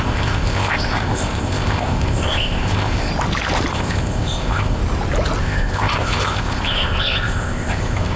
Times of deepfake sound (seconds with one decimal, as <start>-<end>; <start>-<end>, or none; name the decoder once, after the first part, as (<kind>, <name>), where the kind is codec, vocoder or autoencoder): 0.0-3.1 (codec, ZipCodec); 3.7-4.8; 5.4-8.2